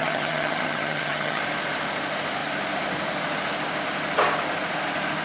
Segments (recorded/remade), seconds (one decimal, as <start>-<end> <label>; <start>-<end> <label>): 0.0-1.4 remade; 1.4-5.2 recorded

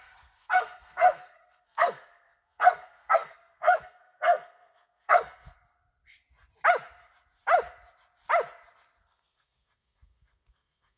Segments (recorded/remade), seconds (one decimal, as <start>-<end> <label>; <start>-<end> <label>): 0.0-5.5 remade; 5.5-9.0 recorded; 9.0-11.0 remade

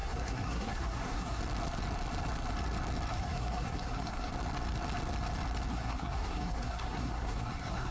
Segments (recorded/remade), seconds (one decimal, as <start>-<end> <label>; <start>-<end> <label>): 0.0-1.4 remade; 1.4-3.1 recorded; 3.1-4.3 remade; 4.3-5.7 recorded; 5.7-7.9 remade

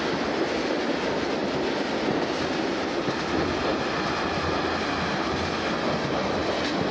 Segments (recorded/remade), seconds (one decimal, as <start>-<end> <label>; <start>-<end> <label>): 0.0-6.9 recorded